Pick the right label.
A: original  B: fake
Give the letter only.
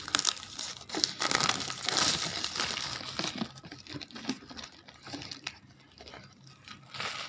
A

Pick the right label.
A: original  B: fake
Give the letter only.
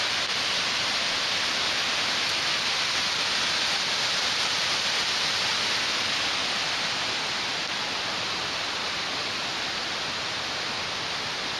A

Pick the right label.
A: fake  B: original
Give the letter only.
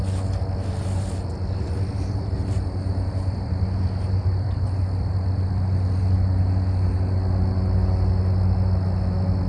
B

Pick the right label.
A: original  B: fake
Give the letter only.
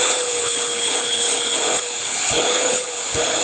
B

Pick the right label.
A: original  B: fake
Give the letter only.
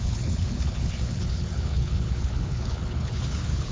B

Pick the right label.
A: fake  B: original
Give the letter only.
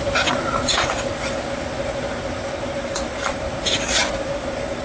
B